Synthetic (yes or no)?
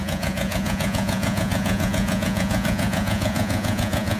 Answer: yes